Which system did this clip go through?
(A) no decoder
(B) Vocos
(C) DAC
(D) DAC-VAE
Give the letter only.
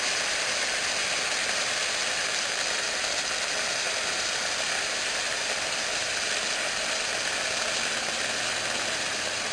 A